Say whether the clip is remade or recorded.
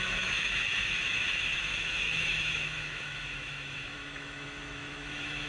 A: remade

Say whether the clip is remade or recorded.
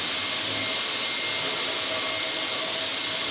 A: recorded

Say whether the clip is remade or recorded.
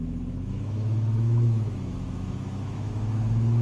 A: remade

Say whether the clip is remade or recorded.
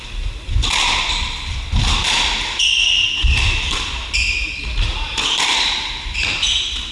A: recorded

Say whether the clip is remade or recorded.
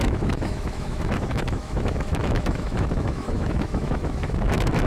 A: remade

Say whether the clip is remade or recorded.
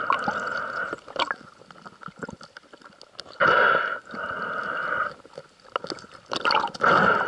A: recorded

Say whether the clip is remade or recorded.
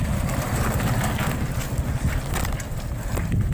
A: recorded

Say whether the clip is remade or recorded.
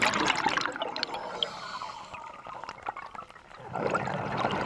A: recorded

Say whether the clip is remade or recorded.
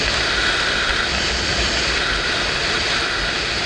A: recorded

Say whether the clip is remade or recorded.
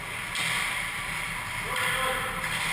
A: recorded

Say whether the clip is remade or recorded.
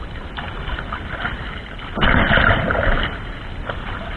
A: recorded